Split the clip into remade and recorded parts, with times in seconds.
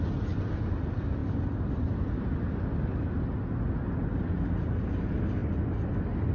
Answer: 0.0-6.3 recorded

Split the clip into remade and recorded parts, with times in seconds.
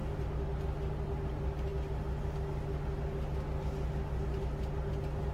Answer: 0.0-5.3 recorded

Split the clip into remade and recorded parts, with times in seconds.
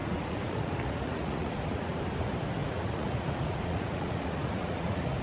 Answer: 0.0-2.0 remade; 2.0-2.6 recorded; 2.6-5.2 remade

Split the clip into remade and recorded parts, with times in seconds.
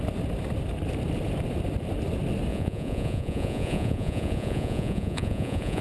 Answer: 0.0-2.5 recorded; 2.5-5.8 remade